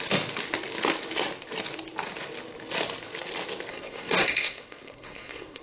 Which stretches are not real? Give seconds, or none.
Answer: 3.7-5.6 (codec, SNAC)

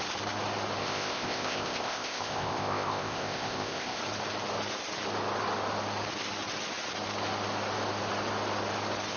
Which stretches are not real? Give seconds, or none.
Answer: 0.8-4.0 (codec, ZipCodec)

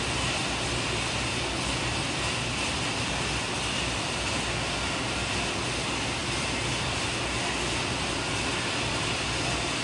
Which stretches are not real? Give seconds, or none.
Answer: none

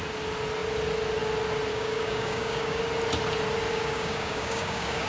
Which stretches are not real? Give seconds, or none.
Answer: 1.7-2.8 (codec, DAC); 3.7-5.1

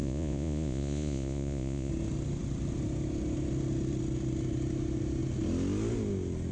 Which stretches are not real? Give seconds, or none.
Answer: 0.0-1.9 (vocoder, Vocos)

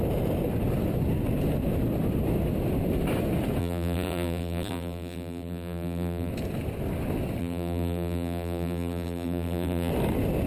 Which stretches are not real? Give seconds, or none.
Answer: 3.6-6.3 (vocoder, BigVGAN v2); 7.4-9.9

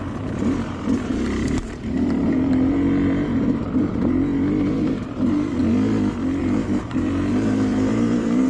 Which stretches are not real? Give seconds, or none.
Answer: 0.0-4.3 (vocoder, BigVGAN v2); 4.9-5.6; 6.4-8.5